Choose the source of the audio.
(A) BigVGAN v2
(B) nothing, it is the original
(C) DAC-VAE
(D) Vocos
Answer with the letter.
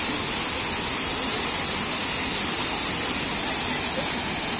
B